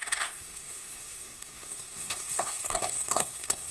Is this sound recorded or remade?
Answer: remade